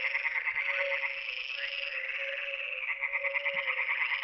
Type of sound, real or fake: real